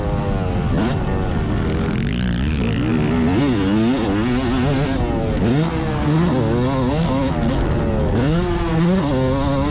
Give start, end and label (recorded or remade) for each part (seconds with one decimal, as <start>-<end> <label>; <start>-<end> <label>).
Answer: 0.0-9.7 recorded